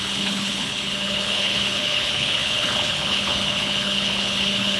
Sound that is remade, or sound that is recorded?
remade